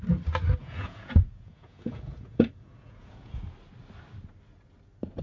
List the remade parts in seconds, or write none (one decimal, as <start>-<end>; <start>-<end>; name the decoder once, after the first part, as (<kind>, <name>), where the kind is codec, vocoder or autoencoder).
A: 0.6-3.4 (vocoder, Vocos)